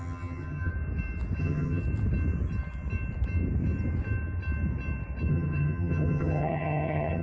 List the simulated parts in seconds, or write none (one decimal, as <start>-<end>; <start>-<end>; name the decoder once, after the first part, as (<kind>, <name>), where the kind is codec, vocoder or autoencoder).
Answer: 0.0-0.7 (vocoder, HiFi-GAN); 1.4-1.8; 5.3-7.2